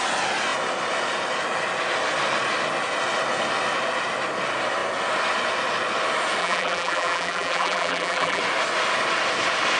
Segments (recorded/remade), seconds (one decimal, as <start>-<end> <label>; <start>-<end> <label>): 0.0-6.4 recorded; 6.4-8.4 remade; 8.4-9.8 recorded